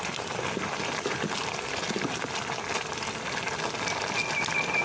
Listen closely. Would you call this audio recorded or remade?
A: recorded